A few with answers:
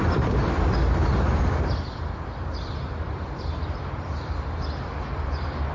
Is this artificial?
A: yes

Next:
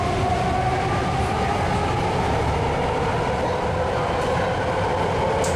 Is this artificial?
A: no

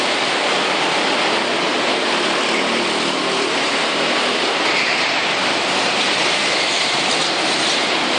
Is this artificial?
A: yes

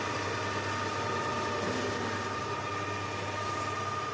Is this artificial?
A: no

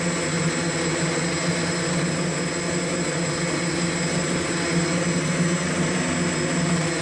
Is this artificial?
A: no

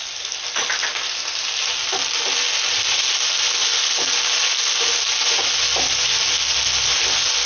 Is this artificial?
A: no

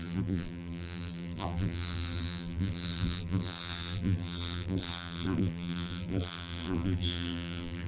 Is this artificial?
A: yes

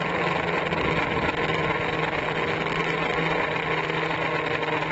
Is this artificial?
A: no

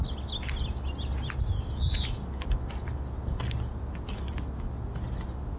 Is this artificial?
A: no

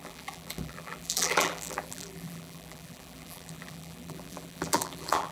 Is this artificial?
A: yes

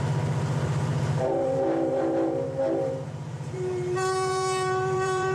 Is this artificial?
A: yes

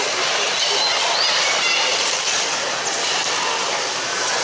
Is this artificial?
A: no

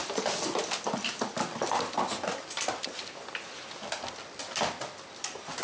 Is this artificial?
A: no